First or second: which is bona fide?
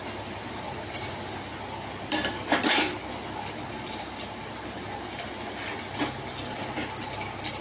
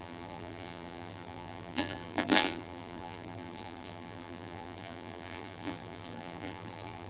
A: first